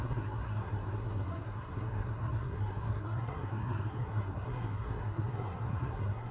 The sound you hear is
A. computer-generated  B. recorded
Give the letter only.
A